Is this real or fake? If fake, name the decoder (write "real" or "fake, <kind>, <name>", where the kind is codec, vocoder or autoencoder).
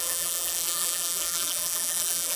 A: fake, vocoder, BigVGAN v2